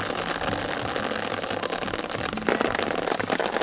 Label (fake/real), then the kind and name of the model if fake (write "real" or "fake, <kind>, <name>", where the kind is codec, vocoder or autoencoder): real